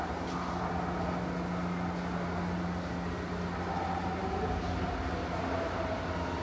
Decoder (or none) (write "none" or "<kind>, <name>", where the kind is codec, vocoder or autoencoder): none